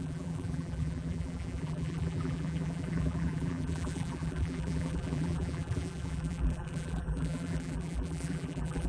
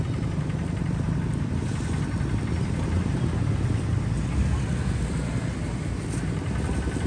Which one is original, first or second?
second